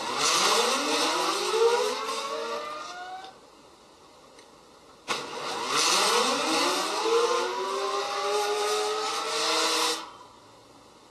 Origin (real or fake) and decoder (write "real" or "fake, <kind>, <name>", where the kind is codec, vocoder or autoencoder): real